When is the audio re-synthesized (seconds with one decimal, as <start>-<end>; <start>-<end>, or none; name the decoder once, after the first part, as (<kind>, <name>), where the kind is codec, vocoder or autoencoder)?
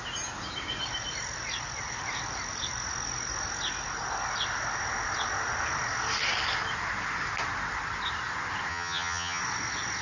8.7-9.4 (vocoder, HiFi-GAN)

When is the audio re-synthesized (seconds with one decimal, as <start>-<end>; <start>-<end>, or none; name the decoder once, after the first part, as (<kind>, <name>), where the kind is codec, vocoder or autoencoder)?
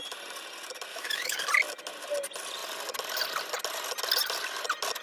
0.9-1.4 (autoencoder, DAC-VAE)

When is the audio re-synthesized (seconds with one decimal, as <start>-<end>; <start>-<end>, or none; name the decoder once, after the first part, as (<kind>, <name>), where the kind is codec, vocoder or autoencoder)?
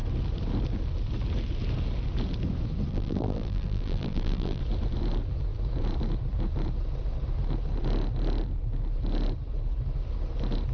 2.9-4.6 (vocoder, BigVGAN v2)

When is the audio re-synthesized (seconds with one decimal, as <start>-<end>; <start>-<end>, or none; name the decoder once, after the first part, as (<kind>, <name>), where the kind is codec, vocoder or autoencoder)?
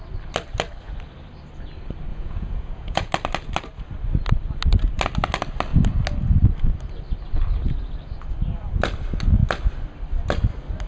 2.1-3.1 (vocoder, Vocos)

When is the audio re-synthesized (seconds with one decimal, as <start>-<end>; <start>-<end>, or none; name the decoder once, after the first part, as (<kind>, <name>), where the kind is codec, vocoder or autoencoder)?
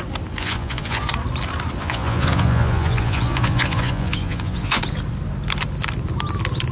0.4-1.1 (vocoder, Vocos); 1.8-4.8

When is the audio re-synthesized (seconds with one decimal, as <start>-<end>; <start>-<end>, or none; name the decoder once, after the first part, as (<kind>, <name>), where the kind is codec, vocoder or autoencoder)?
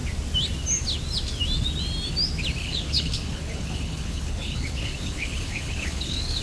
2.6-6.4 (codec, HILCodec)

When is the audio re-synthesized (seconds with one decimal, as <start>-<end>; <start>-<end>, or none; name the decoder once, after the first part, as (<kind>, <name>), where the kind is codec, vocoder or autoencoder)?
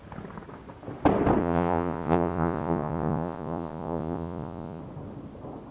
1.4-4.8 (vocoder, Vocos)